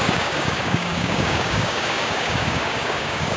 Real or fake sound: fake